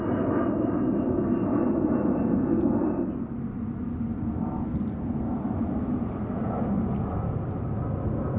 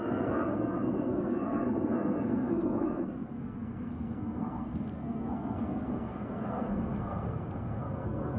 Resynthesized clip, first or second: second